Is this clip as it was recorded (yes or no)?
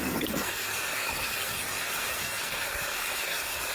no